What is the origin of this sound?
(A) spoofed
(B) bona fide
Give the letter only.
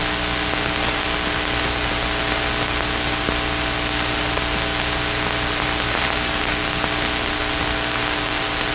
B